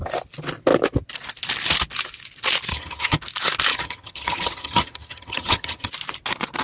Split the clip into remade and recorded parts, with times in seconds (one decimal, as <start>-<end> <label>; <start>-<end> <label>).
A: 0.0-2.7 recorded; 2.7-3.2 remade; 3.2-3.7 recorded; 3.7-5.9 remade; 5.9-6.6 recorded

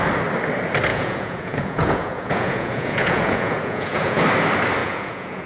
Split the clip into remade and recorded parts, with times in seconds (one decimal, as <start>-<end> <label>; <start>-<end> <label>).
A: 0.0-0.9 recorded; 0.9-4.2 remade; 4.2-4.8 recorded; 4.8-5.5 remade

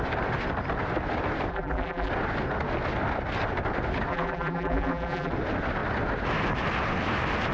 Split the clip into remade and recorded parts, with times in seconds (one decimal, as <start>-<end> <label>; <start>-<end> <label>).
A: 0.0-1.5 recorded; 1.5-2.1 remade; 2.1-4.1 recorded; 4.1-5.3 remade; 5.3-7.5 recorded

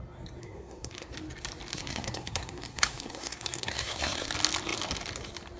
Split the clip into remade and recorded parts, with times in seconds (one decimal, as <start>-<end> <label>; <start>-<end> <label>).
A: 0.0-0.4 recorded; 0.4-1.1 remade; 1.1-1.7 recorded; 1.7-4.3 remade; 4.3-5.6 recorded

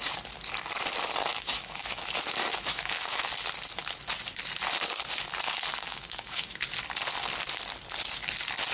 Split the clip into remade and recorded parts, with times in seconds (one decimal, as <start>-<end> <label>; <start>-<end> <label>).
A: 0.0-1.3 recorded; 1.3-3.3 remade; 3.3-5.7 recorded; 5.7-6.6 remade; 6.6-8.7 recorded

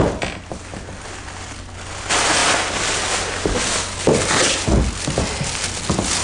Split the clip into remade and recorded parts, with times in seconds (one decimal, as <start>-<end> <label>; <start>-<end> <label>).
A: 0.0-6.2 recorded

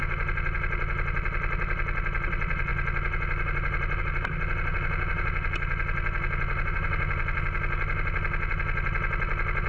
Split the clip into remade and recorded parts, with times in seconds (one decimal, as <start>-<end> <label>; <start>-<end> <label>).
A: 0.0-9.7 recorded

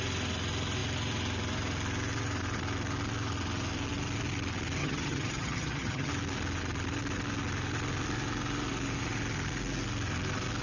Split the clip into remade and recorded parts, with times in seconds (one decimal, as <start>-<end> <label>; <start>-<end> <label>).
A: 0.0-4.8 recorded; 4.8-6.1 remade; 6.1-10.6 recorded